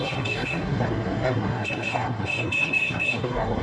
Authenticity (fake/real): fake